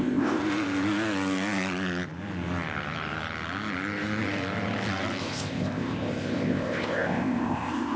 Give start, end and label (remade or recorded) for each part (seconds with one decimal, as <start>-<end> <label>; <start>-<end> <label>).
0.0-0.4 remade; 0.4-5.2 recorded; 5.2-8.0 remade